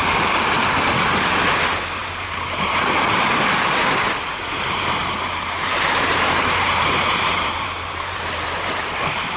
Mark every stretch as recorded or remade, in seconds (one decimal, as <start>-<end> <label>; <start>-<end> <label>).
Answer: 0.0-2.0 recorded; 2.0-2.7 remade; 2.7-5.0 recorded; 5.0-9.4 remade